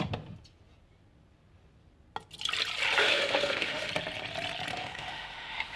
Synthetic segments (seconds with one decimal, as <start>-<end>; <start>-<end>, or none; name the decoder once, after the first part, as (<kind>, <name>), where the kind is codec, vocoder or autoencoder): 3.0-3.9 (autoencoder, DAC-VAE); 4.7-5.8